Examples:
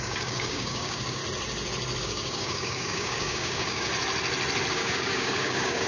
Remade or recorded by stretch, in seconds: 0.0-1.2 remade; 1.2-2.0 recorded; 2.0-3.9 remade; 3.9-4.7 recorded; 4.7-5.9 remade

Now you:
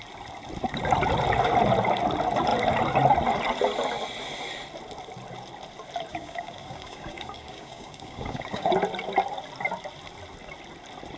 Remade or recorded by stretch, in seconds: 0.0-6.1 recorded; 6.1-8.7 remade; 8.7-11.2 recorded

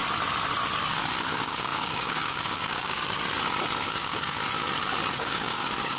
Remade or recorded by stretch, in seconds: 0.0-1.2 recorded; 1.2-3.0 remade; 3.0-3.9 recorded; 3.9-4.4 remade; 4.4-5.1 recorded; 5.1-6.0 remade

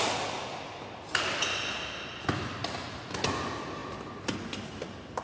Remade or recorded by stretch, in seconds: 0.0-5.2 recorded

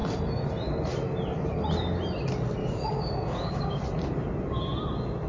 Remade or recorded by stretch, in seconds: 0.0-2.6 recorded; 2.6-3.8 remade; 3.8-5.3 recorded